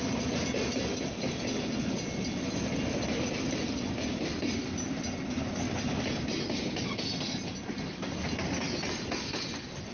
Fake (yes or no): no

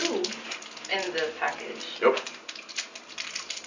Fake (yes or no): no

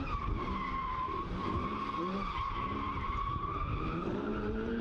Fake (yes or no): yes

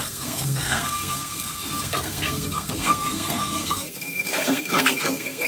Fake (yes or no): yes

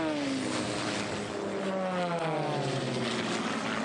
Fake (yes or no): no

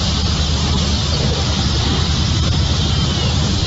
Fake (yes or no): no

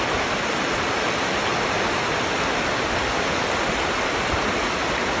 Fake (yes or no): no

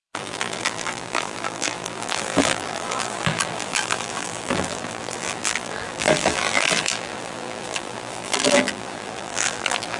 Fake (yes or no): yes